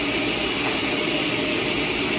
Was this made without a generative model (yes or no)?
yes